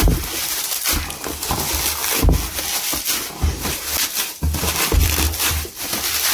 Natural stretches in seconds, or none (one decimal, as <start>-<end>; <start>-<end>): 0.0-6.3

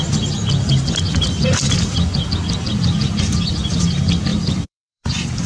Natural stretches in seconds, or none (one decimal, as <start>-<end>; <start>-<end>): 0.0-4.3

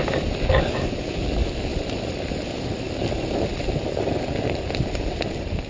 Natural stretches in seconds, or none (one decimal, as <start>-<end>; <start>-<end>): 0.0-5.7

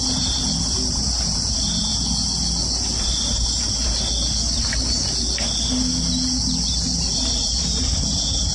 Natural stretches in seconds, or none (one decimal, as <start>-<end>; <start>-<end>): 1.9-6.8

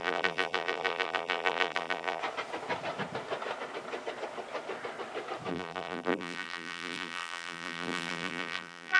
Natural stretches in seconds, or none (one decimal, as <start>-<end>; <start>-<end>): 2.2-5.5

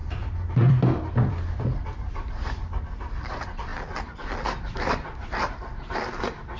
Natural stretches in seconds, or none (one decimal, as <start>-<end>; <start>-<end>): 3.7-4.6

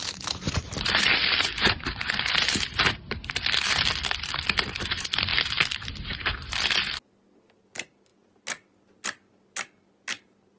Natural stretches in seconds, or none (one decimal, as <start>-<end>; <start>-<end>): 5.3-7.4; 8.1-10.6

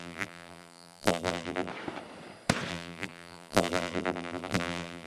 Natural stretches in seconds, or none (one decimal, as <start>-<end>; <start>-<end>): 1.7-2.7